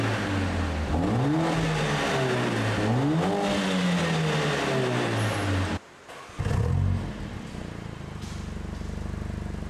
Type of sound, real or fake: real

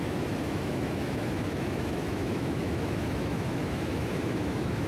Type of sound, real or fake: fake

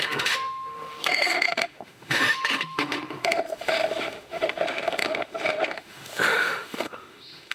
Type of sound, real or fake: fake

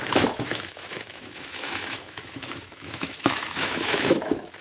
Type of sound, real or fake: fake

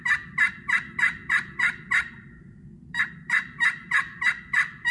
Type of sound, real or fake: real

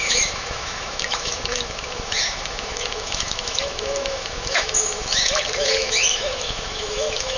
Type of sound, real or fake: fake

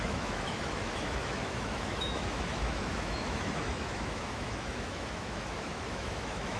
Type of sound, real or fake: fake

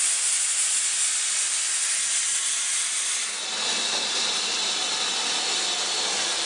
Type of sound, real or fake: real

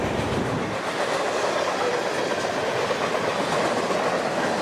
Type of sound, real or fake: real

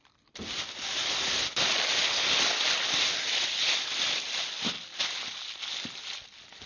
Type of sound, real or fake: real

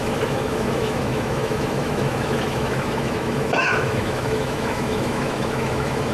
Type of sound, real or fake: fake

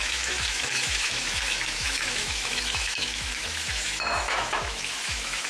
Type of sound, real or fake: fake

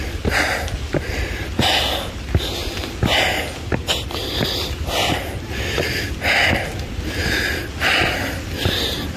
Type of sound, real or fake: real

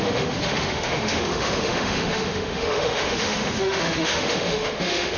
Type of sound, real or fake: fake